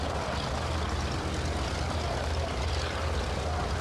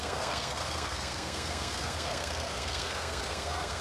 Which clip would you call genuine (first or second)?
first